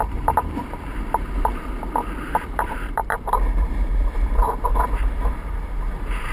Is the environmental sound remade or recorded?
remade